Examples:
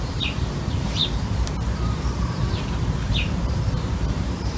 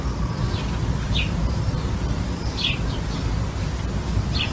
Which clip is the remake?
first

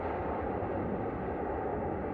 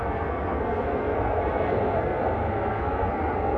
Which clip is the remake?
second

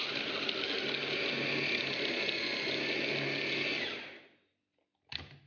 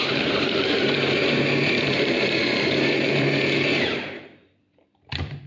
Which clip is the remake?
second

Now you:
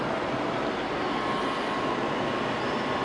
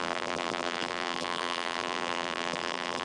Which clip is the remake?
second